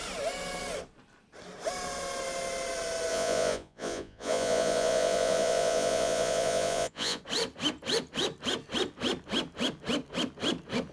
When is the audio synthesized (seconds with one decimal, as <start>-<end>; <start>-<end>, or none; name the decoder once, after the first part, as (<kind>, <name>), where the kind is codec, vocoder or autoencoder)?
3.1-7.2 (vocoder, Vocos)